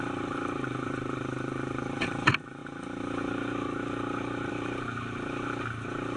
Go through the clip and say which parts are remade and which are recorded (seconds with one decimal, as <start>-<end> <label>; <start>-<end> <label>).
0.0-2.6 remade; 2.6-4.5 recorded; 4.5-6.2 remade